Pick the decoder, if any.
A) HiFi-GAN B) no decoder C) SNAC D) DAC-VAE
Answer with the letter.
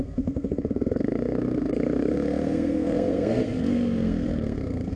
C